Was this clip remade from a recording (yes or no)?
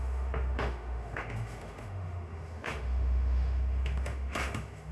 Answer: yes